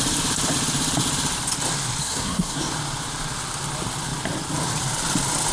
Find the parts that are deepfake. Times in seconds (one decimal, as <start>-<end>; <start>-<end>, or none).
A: 2.0-2.6